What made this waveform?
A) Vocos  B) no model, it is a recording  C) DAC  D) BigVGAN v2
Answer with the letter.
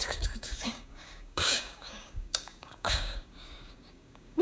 C